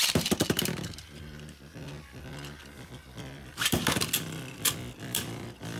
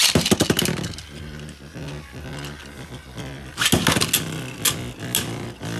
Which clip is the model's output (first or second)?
first